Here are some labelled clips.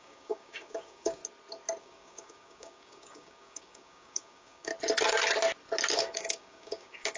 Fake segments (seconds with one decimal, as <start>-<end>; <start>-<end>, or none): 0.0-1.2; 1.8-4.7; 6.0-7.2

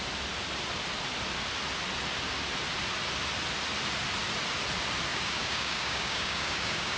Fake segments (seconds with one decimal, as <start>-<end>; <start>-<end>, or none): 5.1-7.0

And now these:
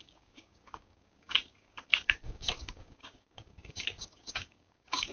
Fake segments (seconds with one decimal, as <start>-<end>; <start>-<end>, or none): 0.0-5.1